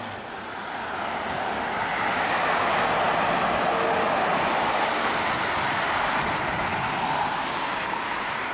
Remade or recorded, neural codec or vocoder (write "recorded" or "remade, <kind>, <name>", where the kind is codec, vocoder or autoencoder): recorded